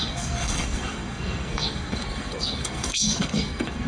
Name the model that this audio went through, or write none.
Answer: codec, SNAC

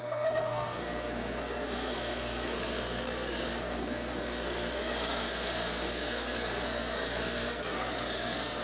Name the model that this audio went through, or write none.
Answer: codec, SNAC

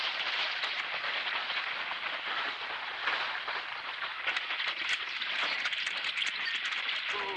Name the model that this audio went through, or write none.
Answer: none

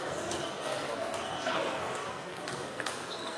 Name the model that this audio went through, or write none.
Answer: codec, SNAC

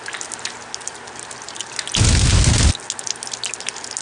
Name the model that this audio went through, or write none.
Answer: none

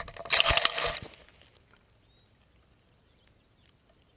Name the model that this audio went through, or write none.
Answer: none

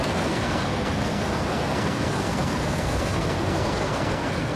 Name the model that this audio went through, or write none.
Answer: codec, SNAC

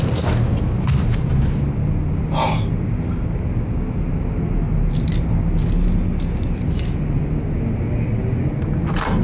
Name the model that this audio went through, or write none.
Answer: none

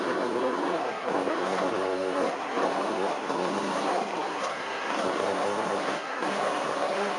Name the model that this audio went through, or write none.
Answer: codec, SNAC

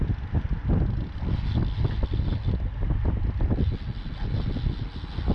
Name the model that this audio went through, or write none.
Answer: none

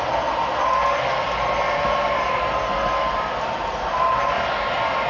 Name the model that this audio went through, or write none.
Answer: none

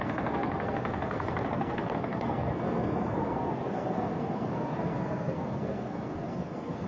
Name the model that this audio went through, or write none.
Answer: codec, SNAC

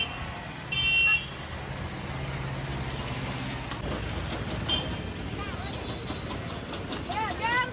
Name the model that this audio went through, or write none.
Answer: none